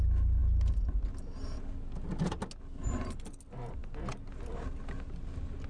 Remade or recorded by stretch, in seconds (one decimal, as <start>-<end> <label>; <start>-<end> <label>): 0.0-5.7 recorded